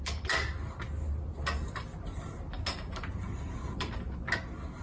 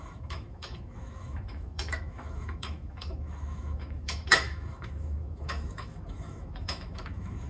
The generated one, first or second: second